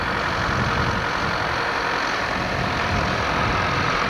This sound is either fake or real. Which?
real